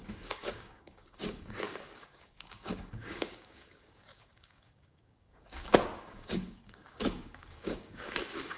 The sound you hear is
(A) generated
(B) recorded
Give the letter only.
A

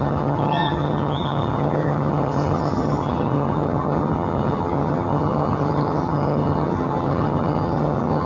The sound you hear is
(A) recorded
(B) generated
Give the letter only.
B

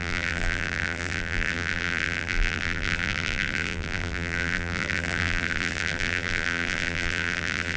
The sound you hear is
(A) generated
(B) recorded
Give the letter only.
A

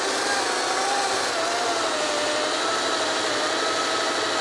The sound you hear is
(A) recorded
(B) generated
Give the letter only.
A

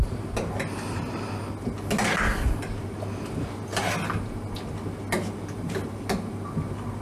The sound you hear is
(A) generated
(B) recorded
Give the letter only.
B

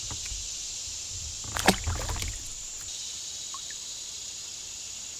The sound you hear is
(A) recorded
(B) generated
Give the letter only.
A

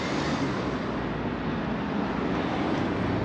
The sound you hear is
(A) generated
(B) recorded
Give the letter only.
B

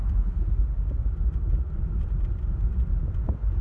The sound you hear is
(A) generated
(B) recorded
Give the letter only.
B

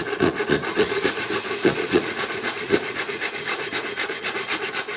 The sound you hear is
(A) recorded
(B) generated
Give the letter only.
B